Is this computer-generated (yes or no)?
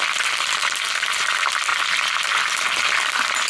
no